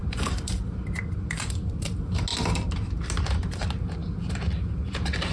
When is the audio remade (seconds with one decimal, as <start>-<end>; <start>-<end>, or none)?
0.0-1.8